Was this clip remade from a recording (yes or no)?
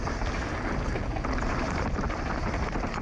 no